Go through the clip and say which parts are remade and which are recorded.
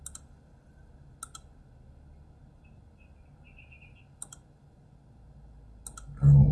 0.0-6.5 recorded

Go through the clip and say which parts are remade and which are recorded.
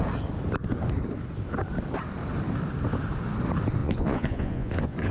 0.0-3.8 recorded; 3.8-5.1 remade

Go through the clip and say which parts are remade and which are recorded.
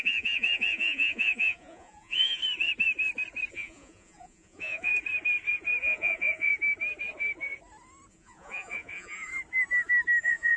0.0-2.4 remade; 2.4-3.5 recorded; 3.5-4.9 remade; 4.9-5.8 recorded; 5.8-6.5 remade; 6.5-8.1 recorded; 8.1-9.3 remade; 9.3-10.2 recorded; 10.2-10.6 remade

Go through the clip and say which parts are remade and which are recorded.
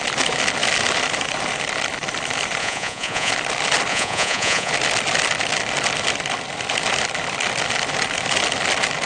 0.0-2.6 recorded; 2.6-3.3 remade; 3.3-3.9 recorded; 3.9-4.7 remade; 4.7-9.1 recorded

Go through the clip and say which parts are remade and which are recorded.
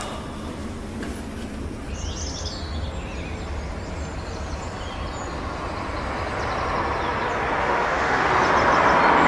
0.0-7.6 recorded; 7.6-8.3 remade; 8.3-9.3 recorded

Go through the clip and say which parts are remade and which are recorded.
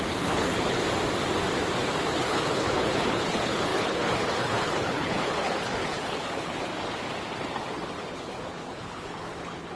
0.0-0.8 remade; 0.8-2.0 recorded; 2.0-6.7 remade; 6.7-8.1 recorded; 8.1-9.8 remade